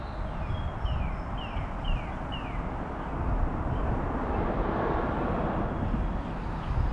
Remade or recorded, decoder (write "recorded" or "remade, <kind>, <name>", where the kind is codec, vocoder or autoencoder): recorded